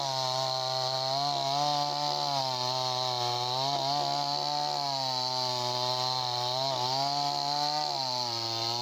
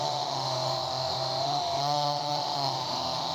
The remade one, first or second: second